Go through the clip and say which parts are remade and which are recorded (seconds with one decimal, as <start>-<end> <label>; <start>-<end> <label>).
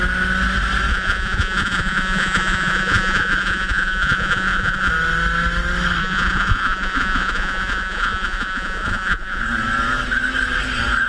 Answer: 0.0-0.9 recorded; 0.9-4.9 remade; 4.9-6.0 recorded; 6.0-9.4 remade; 9.4-11.1 recorded